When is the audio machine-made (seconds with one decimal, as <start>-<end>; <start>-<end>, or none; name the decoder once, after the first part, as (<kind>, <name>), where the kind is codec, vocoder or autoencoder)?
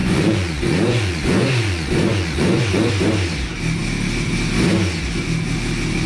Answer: 0.0-2.9 (vocoder, Vocos)